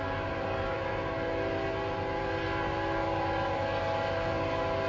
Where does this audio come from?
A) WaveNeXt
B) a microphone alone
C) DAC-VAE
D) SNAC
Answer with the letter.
B